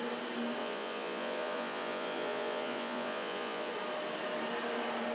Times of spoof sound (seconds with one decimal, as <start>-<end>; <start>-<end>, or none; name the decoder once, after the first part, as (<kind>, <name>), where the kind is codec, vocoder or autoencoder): 0.6-3.7 (vocoder, Vocos)